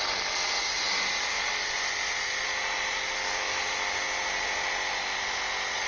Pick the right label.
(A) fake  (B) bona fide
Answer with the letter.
B